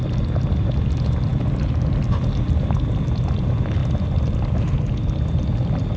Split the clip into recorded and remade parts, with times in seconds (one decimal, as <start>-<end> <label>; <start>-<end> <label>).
0.0-6.0 recorded